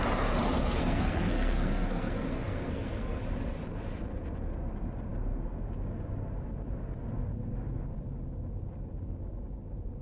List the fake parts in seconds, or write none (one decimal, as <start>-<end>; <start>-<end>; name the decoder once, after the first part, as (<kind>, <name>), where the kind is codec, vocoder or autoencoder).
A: 0.6-3.2 (codec, SNAC)